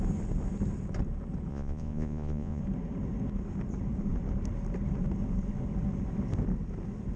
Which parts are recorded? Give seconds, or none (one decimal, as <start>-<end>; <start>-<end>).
0.0-1.5; 2.6-7.2